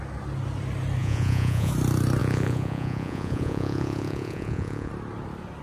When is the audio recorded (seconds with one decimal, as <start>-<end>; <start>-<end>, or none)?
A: 0.0-1.0; 1.7-2.2; 4.9-5.6